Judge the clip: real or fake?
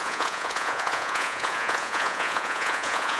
fake